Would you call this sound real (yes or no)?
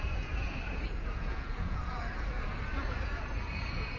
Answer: no